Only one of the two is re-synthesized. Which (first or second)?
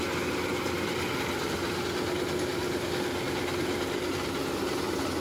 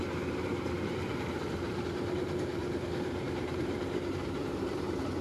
second